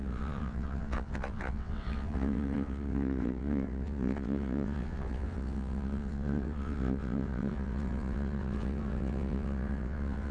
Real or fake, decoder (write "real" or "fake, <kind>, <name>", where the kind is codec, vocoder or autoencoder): fake, vocoder, WaveNeXt